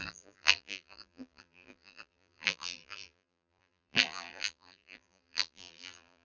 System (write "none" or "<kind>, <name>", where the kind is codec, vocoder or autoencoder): vocoder, BigVGAN v2